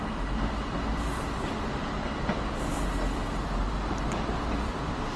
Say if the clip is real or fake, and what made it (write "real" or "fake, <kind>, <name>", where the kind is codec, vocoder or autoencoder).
real